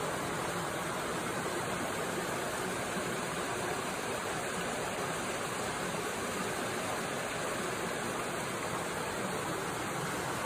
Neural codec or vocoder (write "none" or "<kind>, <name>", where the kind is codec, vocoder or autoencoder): none